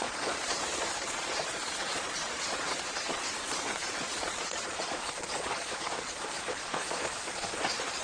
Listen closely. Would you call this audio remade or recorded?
remade